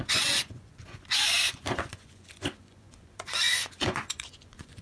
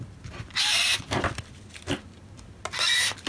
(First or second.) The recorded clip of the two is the second